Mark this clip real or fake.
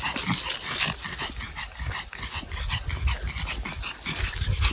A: real